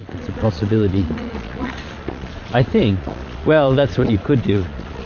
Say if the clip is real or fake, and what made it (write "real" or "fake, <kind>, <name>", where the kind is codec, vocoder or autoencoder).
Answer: fake, vocoder, Vocos